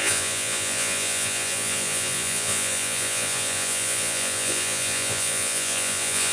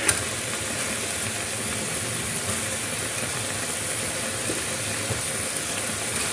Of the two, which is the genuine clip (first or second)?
second